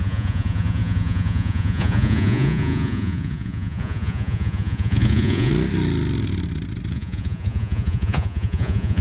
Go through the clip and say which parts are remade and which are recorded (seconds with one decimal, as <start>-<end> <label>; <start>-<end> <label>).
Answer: 0.0-5.5 remade; 5.5-6.9 recorded; 6.9-9.0 remade